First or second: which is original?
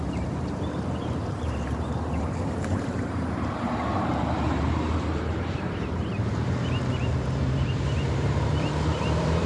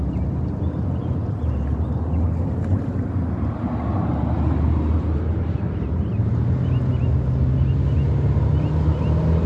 second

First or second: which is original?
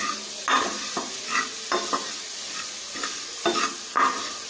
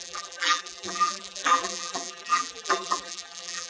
first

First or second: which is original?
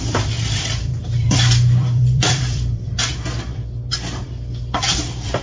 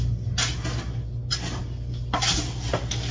second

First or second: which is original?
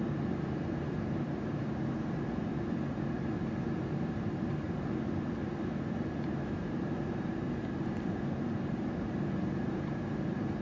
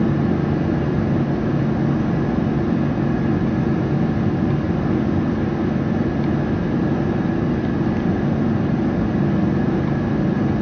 second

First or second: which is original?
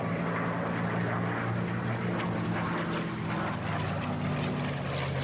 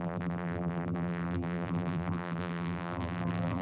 first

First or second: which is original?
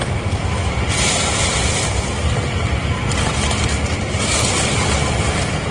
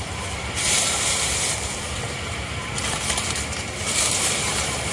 first